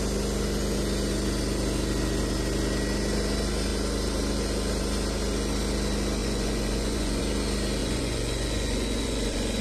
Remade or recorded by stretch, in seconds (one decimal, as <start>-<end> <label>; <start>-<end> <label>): 0.0-6.2 recorded; 6.2-7.2 remade; 7.2-7.8 recorded; 7.8-9.6 remade